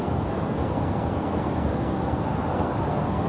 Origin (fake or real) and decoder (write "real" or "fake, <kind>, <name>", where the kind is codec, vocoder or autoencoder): fake, codec, SNAC